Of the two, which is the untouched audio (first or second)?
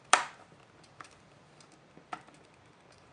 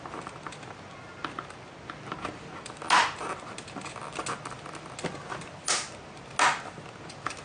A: second